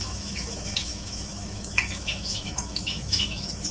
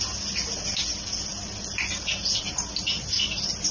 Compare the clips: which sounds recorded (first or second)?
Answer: second